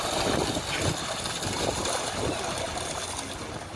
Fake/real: real